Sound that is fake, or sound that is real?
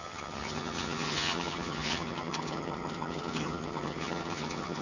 fake